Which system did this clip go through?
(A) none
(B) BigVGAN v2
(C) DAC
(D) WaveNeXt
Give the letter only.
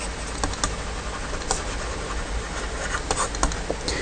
A